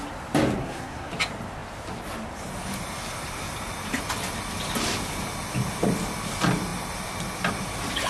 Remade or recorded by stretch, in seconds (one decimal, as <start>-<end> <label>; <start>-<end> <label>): 0.0-0.6 recorded; 0.6-1.1 remade; 1.1-8.1 recorded